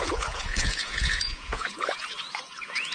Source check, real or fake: fake